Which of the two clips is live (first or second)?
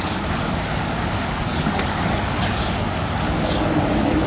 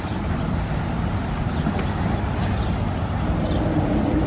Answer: second